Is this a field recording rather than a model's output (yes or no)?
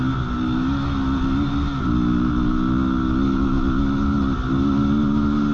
yes